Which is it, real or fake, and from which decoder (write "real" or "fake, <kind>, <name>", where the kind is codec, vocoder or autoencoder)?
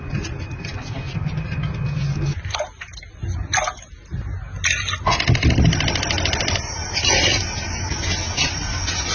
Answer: real